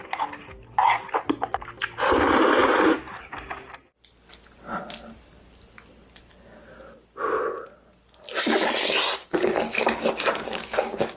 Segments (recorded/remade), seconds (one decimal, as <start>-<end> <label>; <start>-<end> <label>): 0.0-9.2 recorded; 9.2-11.2 remade